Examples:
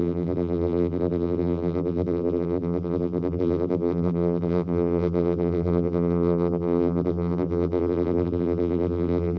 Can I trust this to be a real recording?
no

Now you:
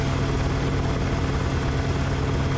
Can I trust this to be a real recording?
yes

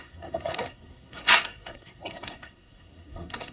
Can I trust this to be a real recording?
no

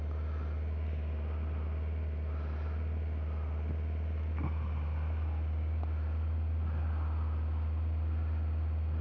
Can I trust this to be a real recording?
yes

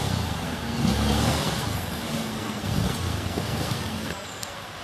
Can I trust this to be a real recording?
no